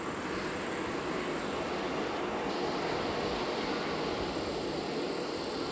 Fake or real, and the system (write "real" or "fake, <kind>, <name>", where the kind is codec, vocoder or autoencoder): real